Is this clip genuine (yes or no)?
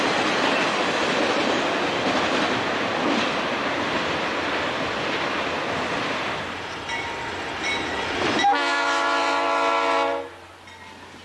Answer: yes